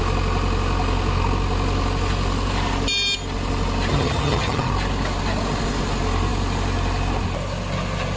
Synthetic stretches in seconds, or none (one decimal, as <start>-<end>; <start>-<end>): 3.9-4.7

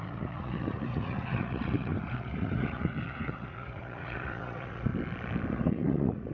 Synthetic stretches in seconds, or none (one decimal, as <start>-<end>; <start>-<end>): 0.0-4.9; 5.5-6.3

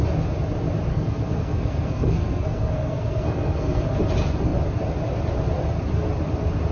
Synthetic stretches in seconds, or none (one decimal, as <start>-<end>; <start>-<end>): 0.9-4.0

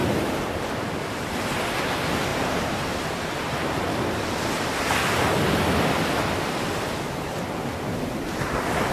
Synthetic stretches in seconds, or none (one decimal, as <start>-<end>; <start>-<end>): 0.0-0.7; 2.3-3.8

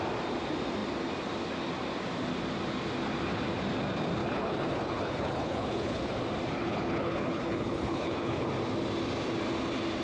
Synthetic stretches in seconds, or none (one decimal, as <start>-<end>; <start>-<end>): 4.2-6.0; 6.6-8.5